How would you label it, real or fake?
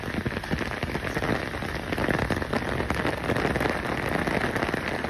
real